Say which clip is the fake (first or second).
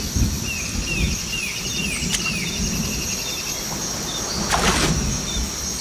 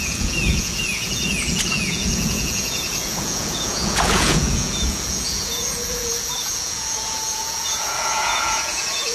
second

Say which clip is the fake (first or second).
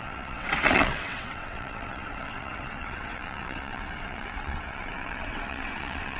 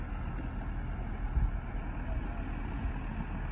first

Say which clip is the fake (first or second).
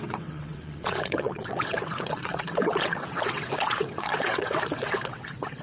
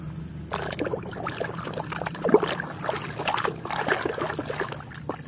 first